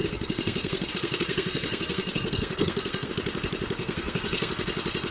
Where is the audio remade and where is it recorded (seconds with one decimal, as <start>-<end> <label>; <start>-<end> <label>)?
0.0-3.1 remade; 3.1-3.8 recorded; 3.8-4.5 remade; 4.5-5.1 recorded